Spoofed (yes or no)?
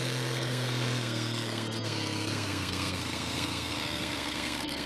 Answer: yes